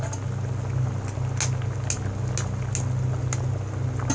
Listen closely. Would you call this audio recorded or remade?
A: recorded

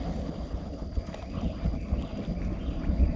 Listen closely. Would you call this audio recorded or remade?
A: recorded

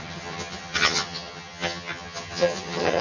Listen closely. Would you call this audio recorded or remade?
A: remade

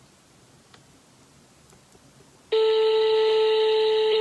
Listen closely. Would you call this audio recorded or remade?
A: recorded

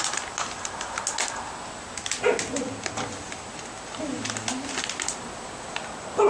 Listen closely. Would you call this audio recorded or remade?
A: recorded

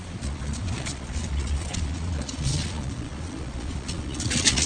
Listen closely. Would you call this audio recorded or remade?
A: remade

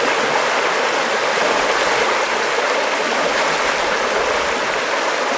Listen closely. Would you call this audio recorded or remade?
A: recorded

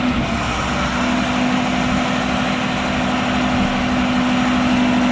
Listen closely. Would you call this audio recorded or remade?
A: recorded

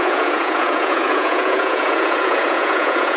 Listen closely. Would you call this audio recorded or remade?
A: remade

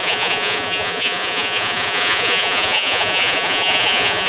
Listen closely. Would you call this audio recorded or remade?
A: remade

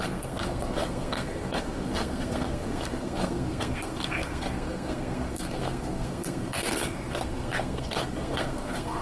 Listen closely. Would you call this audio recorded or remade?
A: remade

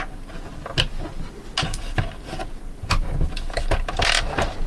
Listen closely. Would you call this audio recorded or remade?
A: recorded